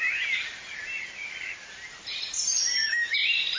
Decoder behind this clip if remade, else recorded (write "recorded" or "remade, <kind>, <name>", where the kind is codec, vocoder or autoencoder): recorded